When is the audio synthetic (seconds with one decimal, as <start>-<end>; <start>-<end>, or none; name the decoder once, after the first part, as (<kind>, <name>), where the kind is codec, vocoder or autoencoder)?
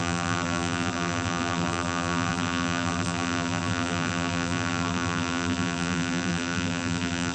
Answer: 0.0-7.3 (vocoder, BigVGAN v2)